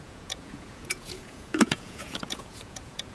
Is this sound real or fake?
fake